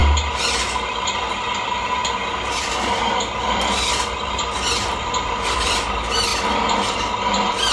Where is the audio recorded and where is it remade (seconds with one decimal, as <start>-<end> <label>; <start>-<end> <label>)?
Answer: 0.0-0.9 recorded; 0.9-2.0 remade; 2.0-5.1 recorded; 5.1-6.3 remade; 6.3-7.2 recorded; 7.2-7.7 remade